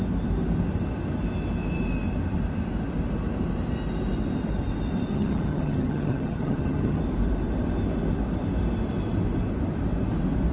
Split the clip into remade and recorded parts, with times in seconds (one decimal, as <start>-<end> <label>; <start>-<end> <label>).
0.0-5.1 recorded; 5.1-7.0 remade; 7.0-10.5 recorded